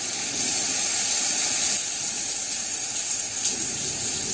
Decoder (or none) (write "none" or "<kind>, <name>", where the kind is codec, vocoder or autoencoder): none